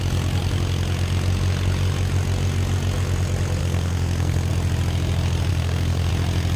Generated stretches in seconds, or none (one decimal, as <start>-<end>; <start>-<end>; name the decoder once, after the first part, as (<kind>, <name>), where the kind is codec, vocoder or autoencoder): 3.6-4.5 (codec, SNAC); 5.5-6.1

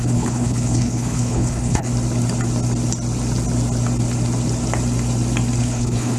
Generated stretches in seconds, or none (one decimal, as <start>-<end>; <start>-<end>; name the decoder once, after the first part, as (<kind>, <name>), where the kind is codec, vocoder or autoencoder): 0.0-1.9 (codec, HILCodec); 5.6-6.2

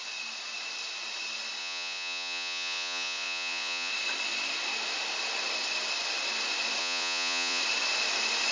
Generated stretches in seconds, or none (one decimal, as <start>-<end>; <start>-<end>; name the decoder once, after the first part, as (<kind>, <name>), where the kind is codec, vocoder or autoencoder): 1.6-3.9 (vocoder, Vocos); 6.8-7.6